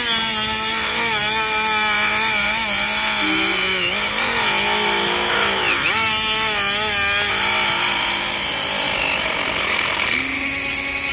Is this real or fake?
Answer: real